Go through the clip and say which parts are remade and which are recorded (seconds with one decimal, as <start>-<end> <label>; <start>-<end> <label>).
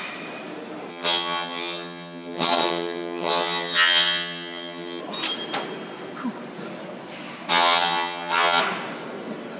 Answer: 0.0-0.9 recorded; 0.9-5.0 remade; 5.0-7.5 recorded; 7.5-8.6 remade; 8.6-9.6 recorded